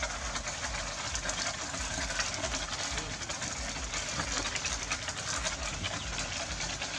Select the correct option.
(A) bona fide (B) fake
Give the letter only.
A